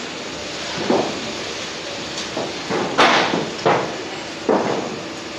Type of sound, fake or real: real